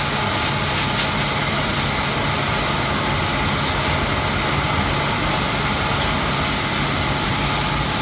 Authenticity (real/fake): real